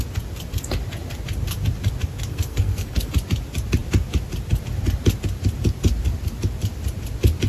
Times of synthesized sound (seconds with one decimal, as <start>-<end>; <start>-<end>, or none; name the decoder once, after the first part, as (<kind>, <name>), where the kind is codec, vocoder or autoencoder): 2.3-3.1 (codec, SNAC)